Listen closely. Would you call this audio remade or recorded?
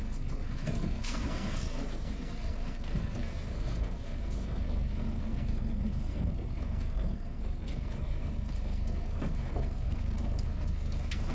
remade